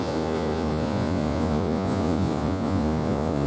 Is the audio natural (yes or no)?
no